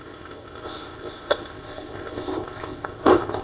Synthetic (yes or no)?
yes